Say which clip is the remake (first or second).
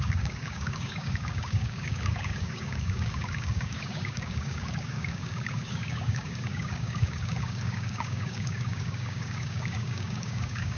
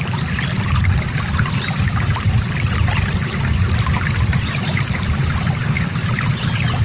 first